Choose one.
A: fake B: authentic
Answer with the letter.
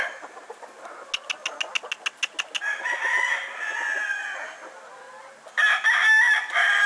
B